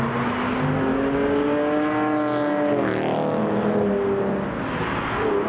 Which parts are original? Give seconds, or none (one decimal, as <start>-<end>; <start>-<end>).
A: 0.0-5.5